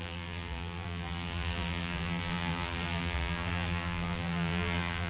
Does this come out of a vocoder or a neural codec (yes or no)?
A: yes